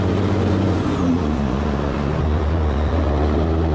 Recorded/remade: remade